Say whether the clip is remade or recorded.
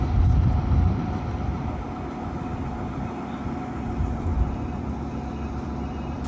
recorded